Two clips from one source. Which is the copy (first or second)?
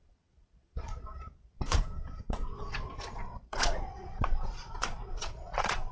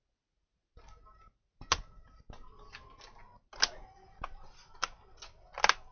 first